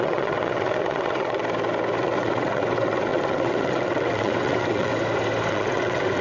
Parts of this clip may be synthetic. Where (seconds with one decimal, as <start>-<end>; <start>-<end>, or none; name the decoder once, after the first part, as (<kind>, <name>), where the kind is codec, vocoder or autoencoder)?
0.0-1.4 (vocoder, WaveNeXt); 2.0-4.9; 5.5-6.2